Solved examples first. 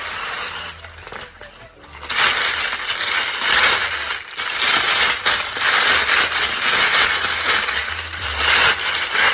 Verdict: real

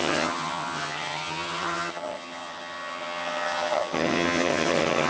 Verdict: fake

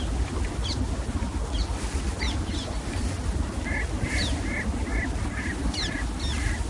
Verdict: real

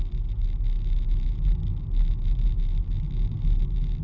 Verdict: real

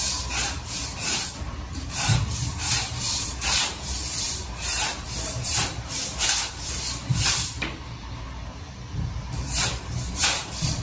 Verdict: fake